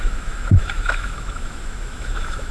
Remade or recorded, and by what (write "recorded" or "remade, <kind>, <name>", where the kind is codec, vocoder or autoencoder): remade, autoencoder, DAC-VAE